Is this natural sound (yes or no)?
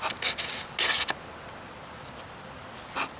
yes